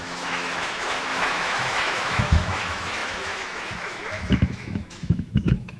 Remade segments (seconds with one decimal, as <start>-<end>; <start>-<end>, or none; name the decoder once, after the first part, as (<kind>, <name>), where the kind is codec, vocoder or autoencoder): 0.0-5.8 (autoencoder, DAC-VAE)